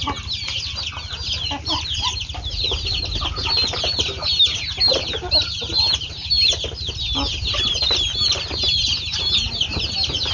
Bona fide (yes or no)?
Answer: yes